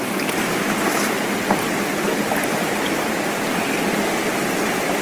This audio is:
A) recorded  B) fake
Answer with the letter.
A